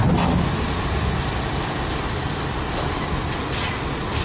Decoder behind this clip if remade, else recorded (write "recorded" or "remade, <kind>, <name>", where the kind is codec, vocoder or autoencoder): recorded